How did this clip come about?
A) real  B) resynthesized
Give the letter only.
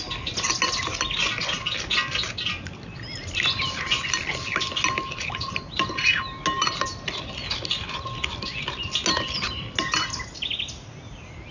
A